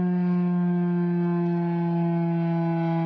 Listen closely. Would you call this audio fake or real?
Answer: real